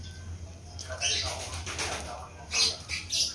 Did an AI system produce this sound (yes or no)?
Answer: no